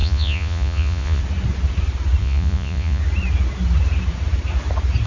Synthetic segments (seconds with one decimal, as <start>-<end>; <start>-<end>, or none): 0.0-1.2; 2.2-3.0